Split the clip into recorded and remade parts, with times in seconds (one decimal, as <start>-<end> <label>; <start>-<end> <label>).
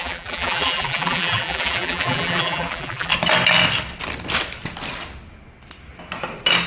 0.0-3.1 remade; 3.1-6.7 recorded